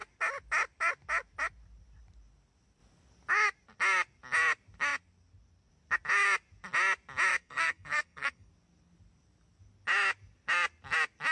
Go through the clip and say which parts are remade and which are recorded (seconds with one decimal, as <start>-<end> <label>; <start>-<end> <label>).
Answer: 0.0-7.3 recorded; 7.3-8.5 remade; 8.5-11.3 recorded